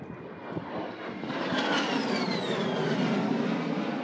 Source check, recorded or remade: recorded